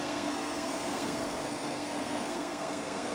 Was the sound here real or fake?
fake